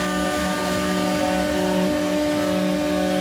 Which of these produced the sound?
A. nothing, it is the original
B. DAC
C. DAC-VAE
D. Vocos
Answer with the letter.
A